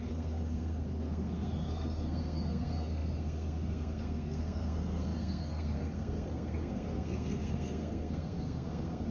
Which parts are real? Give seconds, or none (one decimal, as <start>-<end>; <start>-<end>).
none